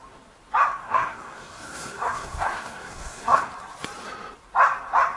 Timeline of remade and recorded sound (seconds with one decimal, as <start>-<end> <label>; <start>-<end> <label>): 0.0-0.8 recorded; 0.8-3.5 remade; 3.5-5.2 recorded